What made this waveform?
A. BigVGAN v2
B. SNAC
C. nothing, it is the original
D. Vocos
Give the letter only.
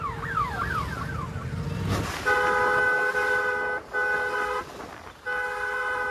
C